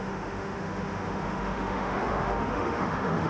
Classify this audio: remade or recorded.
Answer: remade